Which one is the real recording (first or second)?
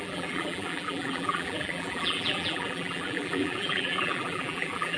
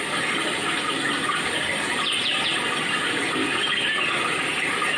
second